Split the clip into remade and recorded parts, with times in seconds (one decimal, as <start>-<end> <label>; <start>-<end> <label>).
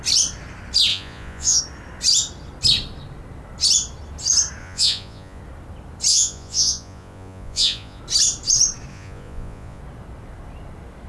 0.0-0.9 recorded; 0.9-1.6 remade; 1.6-4.6 recorded; 4.6-5.4 remade; 5.4-6.1 recorded; 6.1-8.0 remade; 8.0-8.9 recorded; 8.9-9.8 remade; 9.8-11.1 recorded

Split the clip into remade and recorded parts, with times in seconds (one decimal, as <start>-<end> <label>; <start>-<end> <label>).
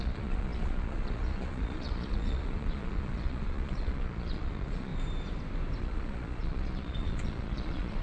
0.0-4.9 remade; 4.9-5.8 recorded; 5.8-8.0 remade